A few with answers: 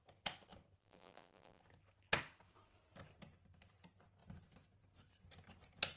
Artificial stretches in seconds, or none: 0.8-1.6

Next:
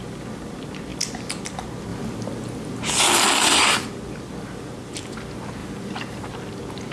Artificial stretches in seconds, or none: 5.6-6.3